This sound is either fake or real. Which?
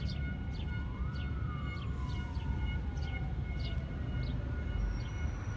real